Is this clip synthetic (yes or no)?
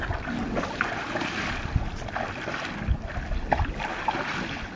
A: no